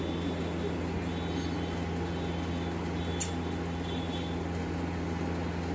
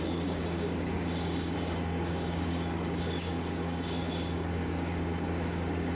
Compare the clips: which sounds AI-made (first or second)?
second